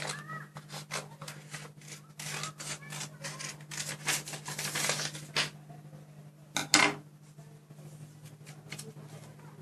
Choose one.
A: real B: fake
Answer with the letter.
A